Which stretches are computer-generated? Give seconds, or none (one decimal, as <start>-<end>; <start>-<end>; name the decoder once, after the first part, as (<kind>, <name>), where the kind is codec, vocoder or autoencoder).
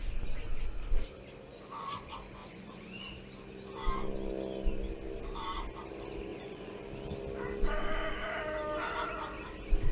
1.5-2.0 (vocoder, Vocos); 2.4-3.0; 6.3-6.8